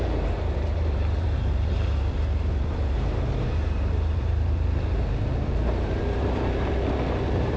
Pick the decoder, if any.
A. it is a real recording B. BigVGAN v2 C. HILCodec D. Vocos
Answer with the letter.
B